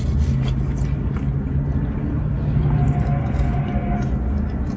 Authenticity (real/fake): real